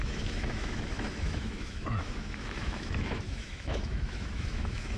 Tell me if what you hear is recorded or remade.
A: remade